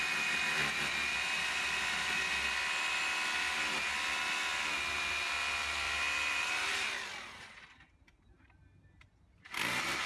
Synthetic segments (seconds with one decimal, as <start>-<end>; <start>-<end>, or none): none